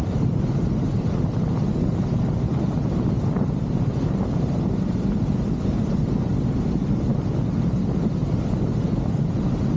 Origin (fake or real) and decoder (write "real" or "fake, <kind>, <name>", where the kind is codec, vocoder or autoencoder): real